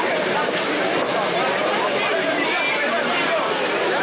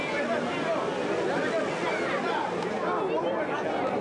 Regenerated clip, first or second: first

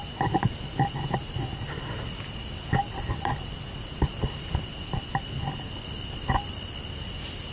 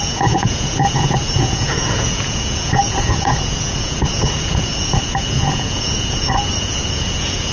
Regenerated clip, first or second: second